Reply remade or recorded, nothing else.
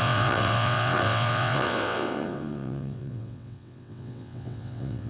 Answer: remade